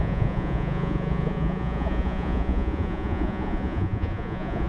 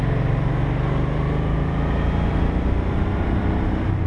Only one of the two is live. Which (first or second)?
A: second